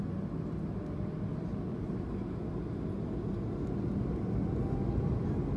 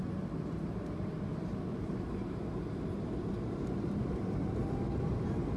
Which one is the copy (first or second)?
second